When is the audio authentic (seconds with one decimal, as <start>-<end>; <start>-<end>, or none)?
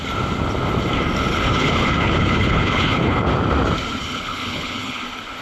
0.0-1.3; 3.3-4.0; 5.0-5.4